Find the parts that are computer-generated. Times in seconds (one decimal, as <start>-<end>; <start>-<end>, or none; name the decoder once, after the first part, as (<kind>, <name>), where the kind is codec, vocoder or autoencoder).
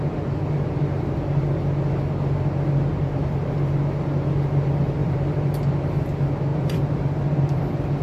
5.0-5.7 (vocoder, BigVGAN v2); 6.5-8.0